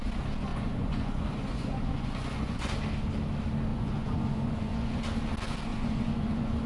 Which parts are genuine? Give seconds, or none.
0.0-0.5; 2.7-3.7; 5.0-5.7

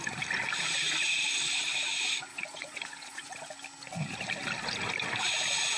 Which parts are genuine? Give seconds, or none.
0.0-2.3; 3.5-5.8

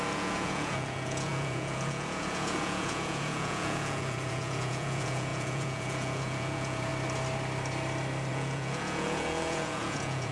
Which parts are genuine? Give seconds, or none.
6.9-8.3